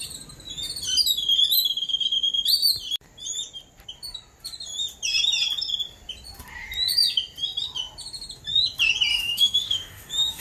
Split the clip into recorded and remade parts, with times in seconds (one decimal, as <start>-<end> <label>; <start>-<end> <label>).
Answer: 0.0-9.1 recorded; 9.1-10.4 remade

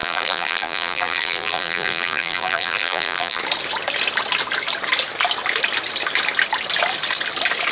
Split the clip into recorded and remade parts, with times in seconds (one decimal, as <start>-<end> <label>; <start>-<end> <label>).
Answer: 0.0-3.4 remade; 3.4-7.7 recorded

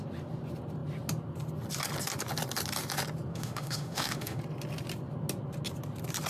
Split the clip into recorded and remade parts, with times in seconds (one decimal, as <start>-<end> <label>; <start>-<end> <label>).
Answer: 0.0-3.3 recorded; 3.3-4.4 remade; 4.4-6.3 recorded

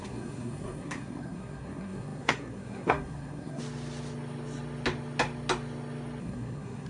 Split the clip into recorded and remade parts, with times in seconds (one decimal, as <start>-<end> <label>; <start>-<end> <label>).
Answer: 0.0-3.6 remade; 3.6-6.2 recorded; 6.2-6.9 remade

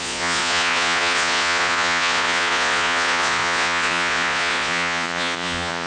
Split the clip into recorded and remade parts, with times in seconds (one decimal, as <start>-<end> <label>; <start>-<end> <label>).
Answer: 0.0-5.9 remade

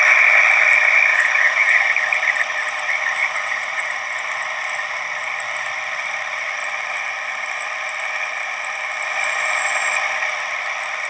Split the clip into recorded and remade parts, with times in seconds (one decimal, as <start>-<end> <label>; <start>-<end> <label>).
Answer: 0.0-1.1 recorded; 1.1-1.8 remade; 1.8-3.2 recorded; 3.2-4.2 remade; 4.2-11.1 recorded

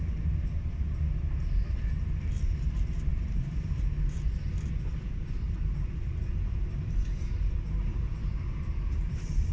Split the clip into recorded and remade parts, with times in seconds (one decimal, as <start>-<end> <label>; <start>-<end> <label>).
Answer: 0.0-9.5 remade

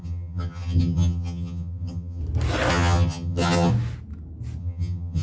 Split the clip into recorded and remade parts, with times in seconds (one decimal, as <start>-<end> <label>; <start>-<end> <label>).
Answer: 0.0-2.2 remade; 2.2-2.7 recorded; 2.7-3.7 remade; 3.7-4.6 recorded; 4.6-5.2 remade